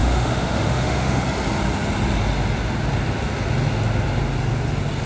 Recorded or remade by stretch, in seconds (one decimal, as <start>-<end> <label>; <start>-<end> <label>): 0.0-1.2 remade; 1.2-5.1 recorded